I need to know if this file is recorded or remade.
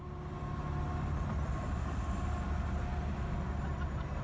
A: recorded